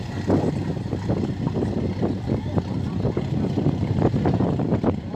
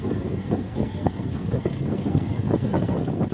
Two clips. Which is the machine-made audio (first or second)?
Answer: second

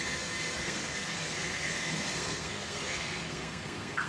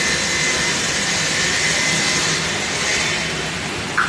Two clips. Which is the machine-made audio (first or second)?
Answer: first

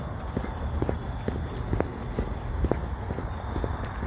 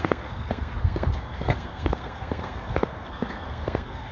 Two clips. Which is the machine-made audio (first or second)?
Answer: second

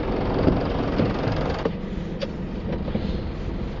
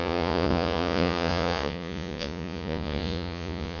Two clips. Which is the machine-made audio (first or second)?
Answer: second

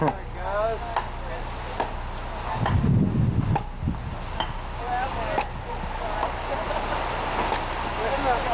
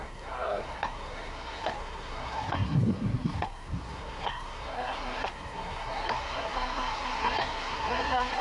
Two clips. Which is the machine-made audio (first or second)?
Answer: second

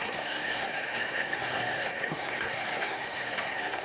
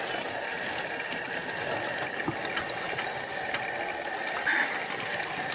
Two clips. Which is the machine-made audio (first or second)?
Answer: first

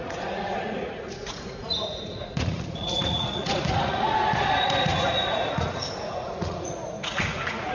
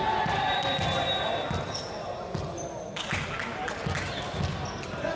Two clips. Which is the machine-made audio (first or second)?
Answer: first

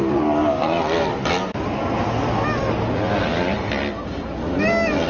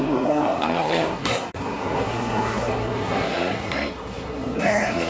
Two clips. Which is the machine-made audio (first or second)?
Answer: second